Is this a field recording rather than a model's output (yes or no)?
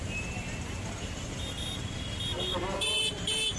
no